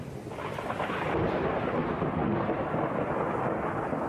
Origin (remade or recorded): recorded